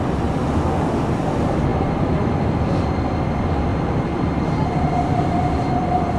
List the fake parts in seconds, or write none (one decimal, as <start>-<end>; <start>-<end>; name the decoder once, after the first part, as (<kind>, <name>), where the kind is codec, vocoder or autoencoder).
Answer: 3.7-5.0 (vocoder, BigVGAN v2)